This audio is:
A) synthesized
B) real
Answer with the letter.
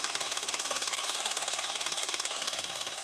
A